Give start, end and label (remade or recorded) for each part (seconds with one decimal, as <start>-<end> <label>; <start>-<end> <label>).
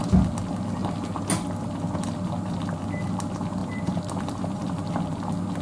0.0-3.6 recorded; 3.6-4.9 remade; 4.9-5.6 recorded